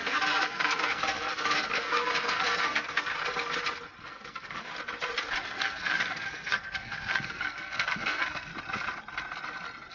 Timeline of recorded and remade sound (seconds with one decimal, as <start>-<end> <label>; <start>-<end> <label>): 0.0-3.1 remade; 3.1-4.0 recorded; 4.0-4.7 remade; 4.7-5.4 recorded; 5.4-8.5 remade; 8.5-9.9 recorded

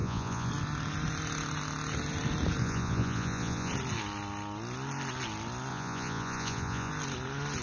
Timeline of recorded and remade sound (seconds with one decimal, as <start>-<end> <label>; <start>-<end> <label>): 0.0-0.5 remade; 0.5-2.6 recorded; 2.6-3.7 remade; 3.7-5.7 recorded; 5.7-6.9 remade; 6.9-7.6 recorded

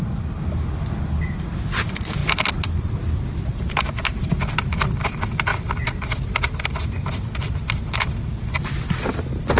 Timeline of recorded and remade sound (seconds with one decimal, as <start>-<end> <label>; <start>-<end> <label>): 0.0-9.6 recorded

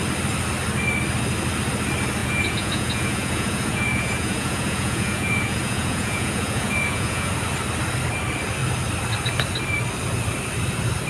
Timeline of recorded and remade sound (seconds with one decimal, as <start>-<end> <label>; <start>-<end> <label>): 0.0-2.2 recorded; 2.2-7.3 remade; 7.3-11.1 recorded

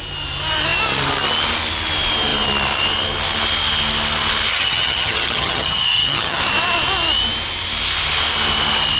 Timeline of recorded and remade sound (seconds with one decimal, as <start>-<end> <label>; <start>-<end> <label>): 0.0-4.5 recorded; 4.5-6.4 remade; 6.4-9.0 recorded

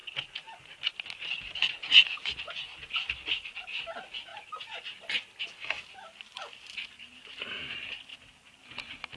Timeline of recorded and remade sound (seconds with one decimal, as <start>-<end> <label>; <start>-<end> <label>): 0.0-9.2 recorded

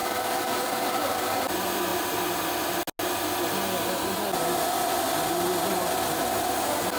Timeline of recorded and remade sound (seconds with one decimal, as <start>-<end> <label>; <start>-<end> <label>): 0.0-1.4 remade; 1.4-7.0 recorded